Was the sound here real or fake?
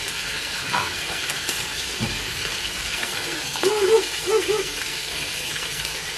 fake